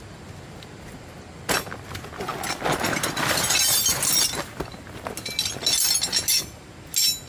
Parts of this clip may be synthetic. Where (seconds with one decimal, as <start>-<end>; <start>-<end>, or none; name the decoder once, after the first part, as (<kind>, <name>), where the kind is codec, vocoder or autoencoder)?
none